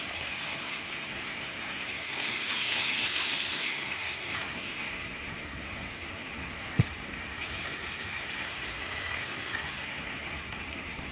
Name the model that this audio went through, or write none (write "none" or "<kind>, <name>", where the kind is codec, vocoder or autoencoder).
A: codec, SNAC